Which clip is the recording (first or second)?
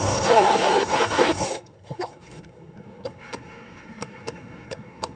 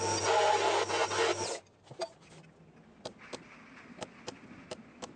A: second